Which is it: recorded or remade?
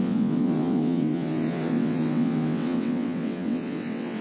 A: remade